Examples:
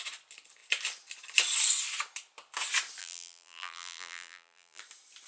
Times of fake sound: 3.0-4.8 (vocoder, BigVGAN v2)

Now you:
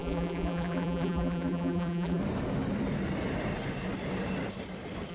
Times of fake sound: 0.0-2.2 (vocoder, BigVGAN v2)

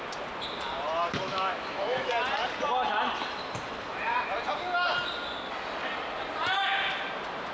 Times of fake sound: 1.3-2.1 (autoencoder, DAC-VAE)

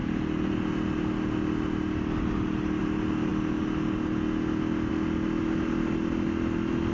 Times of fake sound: none

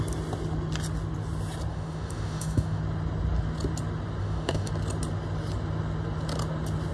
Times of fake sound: 1.7-2.8 (autoencoder, DAC-VAE); 4.2-4.7